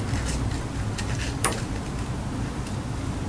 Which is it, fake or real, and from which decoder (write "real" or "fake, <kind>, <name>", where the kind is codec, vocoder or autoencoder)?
fake, vocoder, BigVGAN v2